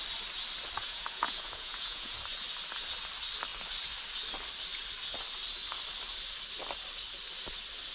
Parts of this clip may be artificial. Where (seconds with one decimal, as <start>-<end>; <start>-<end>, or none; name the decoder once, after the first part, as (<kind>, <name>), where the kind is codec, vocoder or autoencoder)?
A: 0.8-2.2 (vocoder, Vocos)

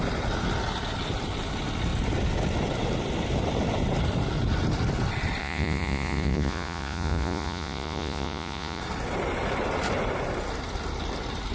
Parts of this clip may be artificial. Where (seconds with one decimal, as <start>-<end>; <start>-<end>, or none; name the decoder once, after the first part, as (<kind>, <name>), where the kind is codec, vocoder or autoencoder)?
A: 5.4-8.8 (vocoder, Vocos)

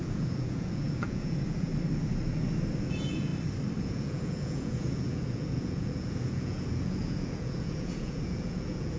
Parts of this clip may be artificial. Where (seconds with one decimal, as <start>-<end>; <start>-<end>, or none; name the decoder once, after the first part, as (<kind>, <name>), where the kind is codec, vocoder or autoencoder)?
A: 0.0-1.7 (vocoder, Vocos); 2.8-3.3; 3.8-9.0

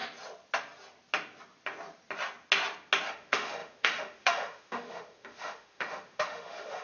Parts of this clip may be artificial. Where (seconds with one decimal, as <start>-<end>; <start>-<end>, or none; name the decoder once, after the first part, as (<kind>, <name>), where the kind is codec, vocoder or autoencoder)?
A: 3.1-6.8 (autoencoder, DAC-VAE)

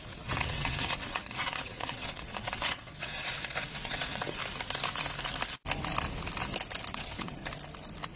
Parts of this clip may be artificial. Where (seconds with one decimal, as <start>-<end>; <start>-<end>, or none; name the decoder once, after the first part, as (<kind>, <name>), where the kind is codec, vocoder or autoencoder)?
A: 0.0-4.4 (vocoder, WaveNeXt); 6.9-7.4

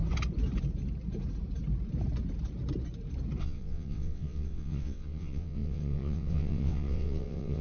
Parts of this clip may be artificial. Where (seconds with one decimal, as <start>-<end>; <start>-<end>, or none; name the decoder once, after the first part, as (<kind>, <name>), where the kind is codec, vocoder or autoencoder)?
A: 3.4-7.6 (vocoder, WaveNeXt)